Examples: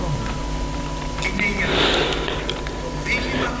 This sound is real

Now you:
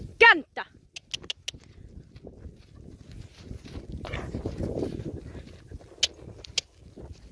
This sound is real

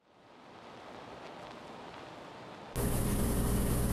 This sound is real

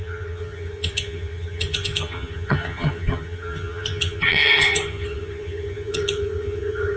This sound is fake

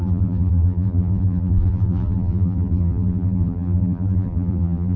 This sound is fake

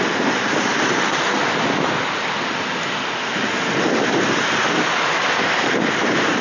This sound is real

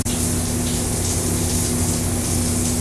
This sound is real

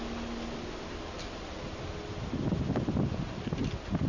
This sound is real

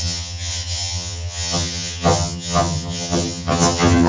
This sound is fake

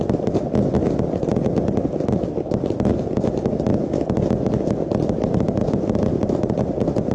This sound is real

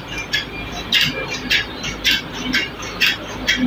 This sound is real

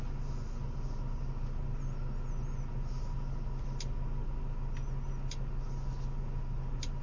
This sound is real